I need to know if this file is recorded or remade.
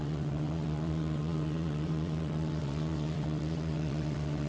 remade